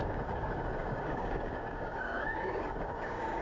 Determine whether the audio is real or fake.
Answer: fake